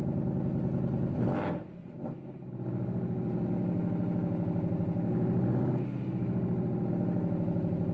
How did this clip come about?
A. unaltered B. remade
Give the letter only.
A